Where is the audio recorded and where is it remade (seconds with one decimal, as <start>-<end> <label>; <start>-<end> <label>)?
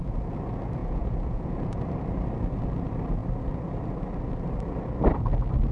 0.0-0.8 recorded; 0.8-1.8 remade; 1.8-5.7 recorded